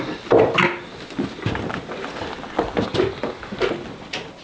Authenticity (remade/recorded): recorded